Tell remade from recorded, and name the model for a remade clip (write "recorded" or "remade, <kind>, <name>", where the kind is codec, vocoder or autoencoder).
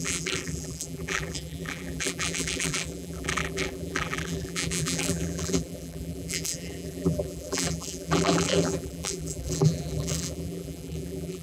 remade, vocoder, BigVGAN v2